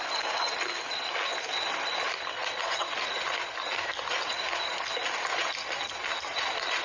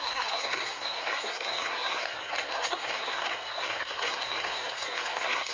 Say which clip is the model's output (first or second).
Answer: second